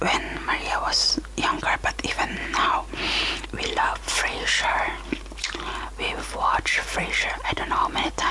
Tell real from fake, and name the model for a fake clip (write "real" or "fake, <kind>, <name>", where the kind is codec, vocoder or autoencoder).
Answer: fake, vocoder, BigVGAN v2